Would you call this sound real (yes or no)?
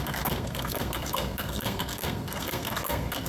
no